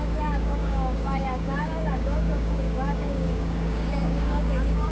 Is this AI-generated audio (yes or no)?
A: yes